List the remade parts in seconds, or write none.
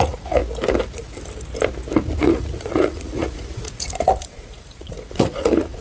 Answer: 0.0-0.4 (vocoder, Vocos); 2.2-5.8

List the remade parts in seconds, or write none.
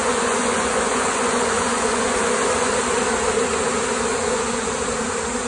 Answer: 0.0-2.7 (vocoder, Vocos); 4.1-4.7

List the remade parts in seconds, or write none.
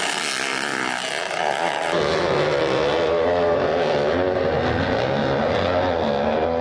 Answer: none